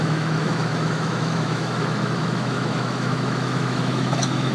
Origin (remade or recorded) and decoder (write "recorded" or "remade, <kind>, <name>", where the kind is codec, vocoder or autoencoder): remade, autoencoder, DAC-VAE